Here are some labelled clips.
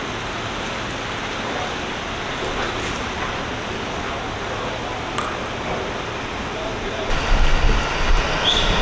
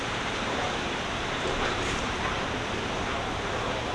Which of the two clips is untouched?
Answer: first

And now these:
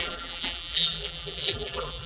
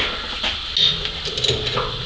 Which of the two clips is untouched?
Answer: second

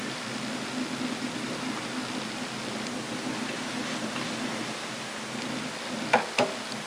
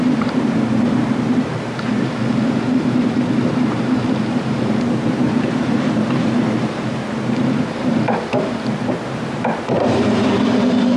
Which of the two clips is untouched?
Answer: first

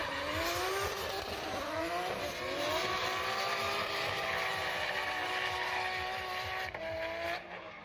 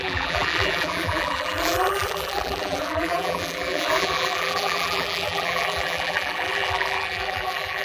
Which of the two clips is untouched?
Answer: first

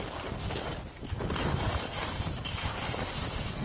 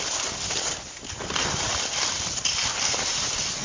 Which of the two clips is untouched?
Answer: first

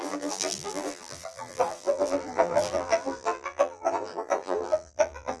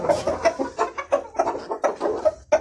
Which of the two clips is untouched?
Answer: second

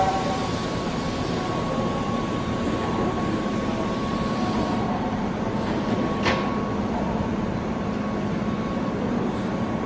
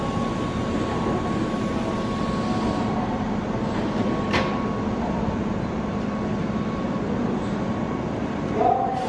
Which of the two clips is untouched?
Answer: second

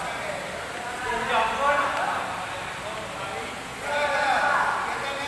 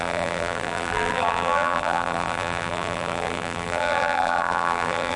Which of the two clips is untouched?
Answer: first